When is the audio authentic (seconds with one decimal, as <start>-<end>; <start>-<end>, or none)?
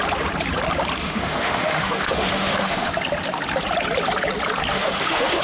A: 0.0-1.0; 2.9-4.7